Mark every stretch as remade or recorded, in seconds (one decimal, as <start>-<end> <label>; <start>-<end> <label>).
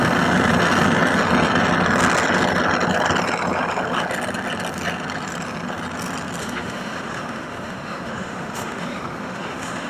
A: 0.0-6.4 recorded; 6.4-9.9 remade